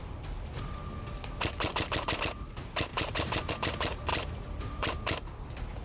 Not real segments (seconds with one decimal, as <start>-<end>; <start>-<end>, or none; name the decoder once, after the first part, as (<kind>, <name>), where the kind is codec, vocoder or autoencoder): 2.9-3.5 (vocoder, BigVGAN v2); 4.1-5.3